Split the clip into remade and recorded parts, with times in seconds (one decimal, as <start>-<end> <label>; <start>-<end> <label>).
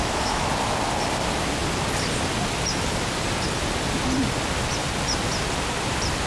0.0-0.5 remade; 0.5-6.3 recorded